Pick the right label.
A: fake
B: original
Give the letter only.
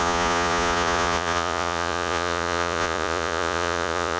A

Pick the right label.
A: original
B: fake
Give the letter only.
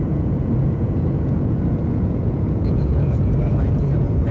B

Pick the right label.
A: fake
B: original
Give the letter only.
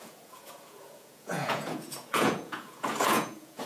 A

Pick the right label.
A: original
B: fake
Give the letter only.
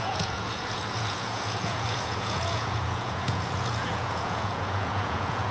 B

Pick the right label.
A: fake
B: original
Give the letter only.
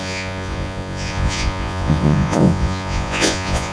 A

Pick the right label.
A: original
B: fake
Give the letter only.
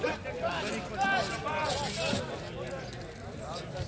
A